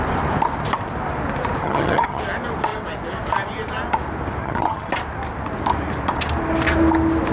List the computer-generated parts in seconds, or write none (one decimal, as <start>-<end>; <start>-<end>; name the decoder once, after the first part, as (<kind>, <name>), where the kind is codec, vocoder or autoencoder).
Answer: 1.6-2.2 (vocoder, HiFi-GAN); 4.4-4.9